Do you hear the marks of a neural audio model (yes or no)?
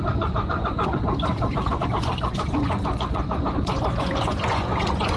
yes